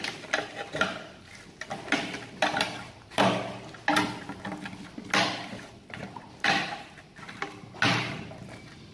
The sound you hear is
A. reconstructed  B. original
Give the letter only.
B